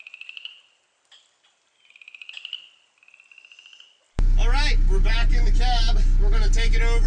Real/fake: real